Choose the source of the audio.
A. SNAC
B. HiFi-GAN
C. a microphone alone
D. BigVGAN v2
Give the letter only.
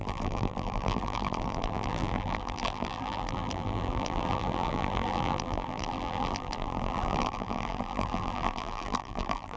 D